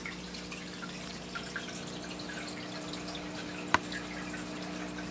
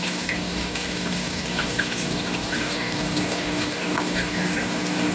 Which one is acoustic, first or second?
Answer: first